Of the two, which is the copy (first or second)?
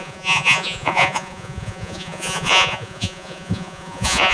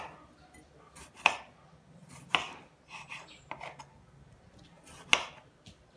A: first